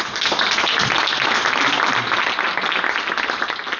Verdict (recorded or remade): recorded